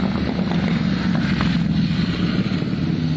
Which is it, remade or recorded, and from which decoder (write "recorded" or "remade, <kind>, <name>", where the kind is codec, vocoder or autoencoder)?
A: recorded